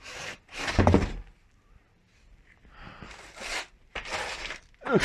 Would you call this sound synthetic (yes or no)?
no